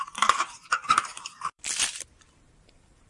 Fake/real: fake